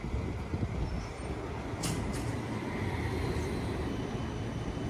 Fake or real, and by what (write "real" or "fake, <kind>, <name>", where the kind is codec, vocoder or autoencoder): real